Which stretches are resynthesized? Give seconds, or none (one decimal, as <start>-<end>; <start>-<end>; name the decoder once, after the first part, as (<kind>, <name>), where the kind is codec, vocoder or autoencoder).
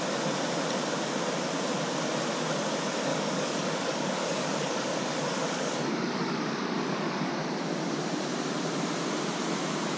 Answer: 3.1-7.3 (codec, DAC)